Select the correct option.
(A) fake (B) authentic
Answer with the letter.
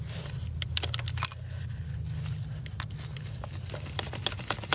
B